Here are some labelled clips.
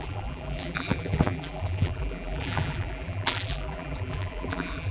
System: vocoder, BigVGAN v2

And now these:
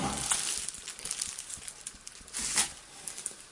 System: none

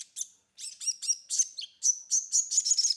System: none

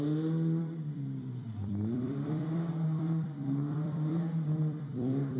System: vocoder, BigVGAN v2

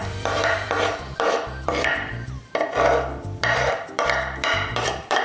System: vocoder, BigVGAN v2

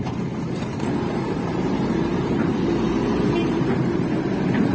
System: vocoder, BigVGAN v2